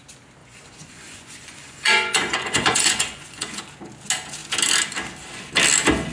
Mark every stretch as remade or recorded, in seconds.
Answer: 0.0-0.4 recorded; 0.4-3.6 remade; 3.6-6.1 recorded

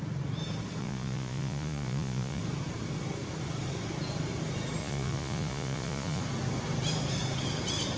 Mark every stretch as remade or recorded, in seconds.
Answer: 0.0-0.8 recorded; 0.8-2.4 remade; 2.4-4.8 recorded; 4.8-6.2 remade; 6.2-8.0 recorded

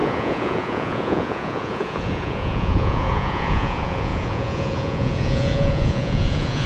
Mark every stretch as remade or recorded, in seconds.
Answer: 0.0-6.7 remade

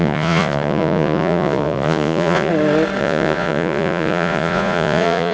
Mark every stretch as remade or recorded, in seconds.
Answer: 0.0-2.5 remade; 2.5-3.0 recorded; 3.0-5.3 remade